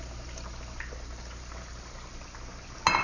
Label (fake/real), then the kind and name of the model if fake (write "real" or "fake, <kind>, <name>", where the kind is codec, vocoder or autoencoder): real